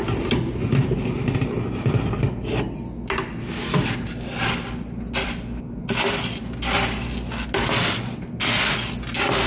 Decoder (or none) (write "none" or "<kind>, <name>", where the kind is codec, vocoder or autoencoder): none